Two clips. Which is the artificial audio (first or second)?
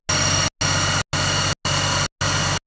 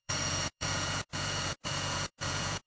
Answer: second